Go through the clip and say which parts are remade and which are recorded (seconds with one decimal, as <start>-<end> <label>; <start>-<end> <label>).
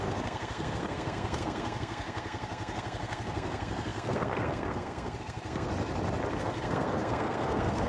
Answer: 0.0-5.7 remade; 5.7-6.3 recorded; 6.3-7.9 remade